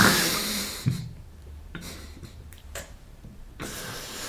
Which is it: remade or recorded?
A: remade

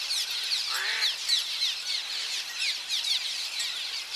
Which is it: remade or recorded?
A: remade